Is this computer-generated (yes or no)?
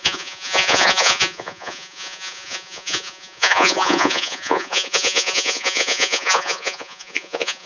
yes